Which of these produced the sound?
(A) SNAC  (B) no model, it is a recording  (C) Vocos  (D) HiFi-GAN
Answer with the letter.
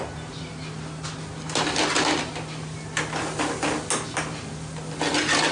B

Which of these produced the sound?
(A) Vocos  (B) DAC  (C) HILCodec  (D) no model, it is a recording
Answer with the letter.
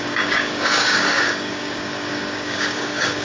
B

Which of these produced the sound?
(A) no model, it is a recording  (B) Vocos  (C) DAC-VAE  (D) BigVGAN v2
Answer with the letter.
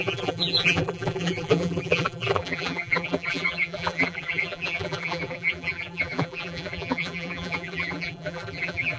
D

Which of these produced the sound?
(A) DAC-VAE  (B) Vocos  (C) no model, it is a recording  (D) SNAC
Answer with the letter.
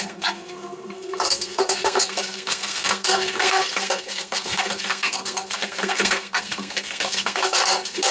D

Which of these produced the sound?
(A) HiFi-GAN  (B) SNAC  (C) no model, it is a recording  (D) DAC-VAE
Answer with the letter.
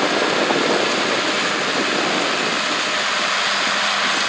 C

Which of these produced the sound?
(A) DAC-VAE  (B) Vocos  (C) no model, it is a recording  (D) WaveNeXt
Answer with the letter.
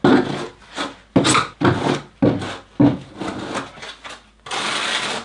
C